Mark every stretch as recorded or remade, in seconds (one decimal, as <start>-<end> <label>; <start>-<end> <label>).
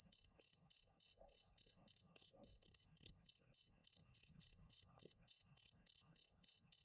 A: 0.0-6.8 remade